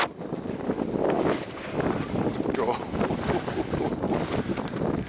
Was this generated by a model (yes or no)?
no